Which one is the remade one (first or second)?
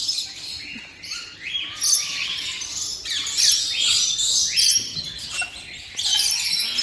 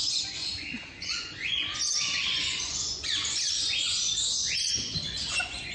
second